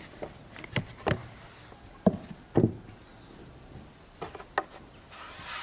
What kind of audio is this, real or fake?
real